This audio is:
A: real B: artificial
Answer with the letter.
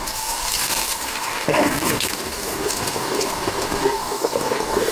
B